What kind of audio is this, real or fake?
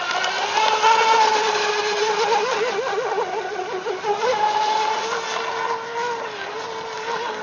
real